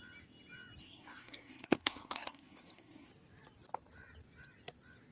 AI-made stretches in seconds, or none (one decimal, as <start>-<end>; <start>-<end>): 0.8-3.1